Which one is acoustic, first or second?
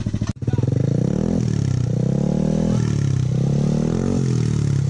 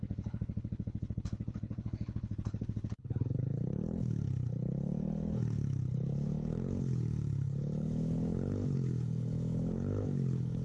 first